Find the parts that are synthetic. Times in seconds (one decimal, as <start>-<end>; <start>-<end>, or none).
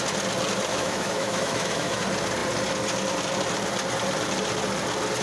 0.7-2.0